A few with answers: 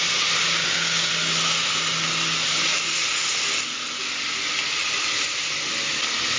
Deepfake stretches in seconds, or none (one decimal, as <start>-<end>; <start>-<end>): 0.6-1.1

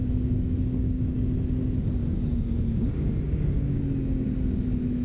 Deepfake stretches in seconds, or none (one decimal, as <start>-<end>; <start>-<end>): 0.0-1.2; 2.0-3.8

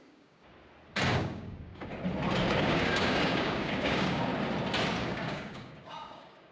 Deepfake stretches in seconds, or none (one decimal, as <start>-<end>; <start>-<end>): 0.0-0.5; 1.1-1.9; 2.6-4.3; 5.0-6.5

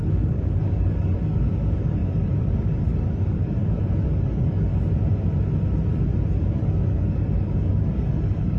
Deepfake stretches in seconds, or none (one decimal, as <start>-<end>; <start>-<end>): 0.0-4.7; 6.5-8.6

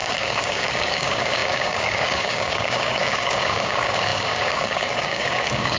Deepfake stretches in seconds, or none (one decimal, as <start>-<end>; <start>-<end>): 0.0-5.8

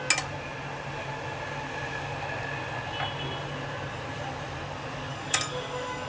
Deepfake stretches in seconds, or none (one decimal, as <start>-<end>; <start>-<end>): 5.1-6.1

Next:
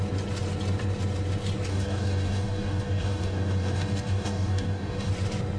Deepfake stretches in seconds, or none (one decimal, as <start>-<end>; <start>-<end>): 1.7-5.1